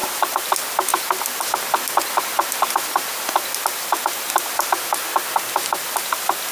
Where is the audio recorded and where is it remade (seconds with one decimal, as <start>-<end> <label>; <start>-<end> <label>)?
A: 0.0-0.5 remade; 0.5-6.5 recorded